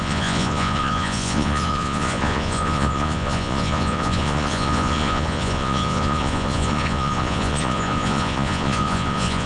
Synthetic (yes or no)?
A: yes